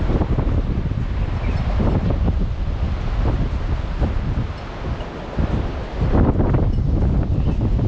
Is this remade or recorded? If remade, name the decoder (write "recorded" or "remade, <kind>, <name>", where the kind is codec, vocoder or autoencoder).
recorded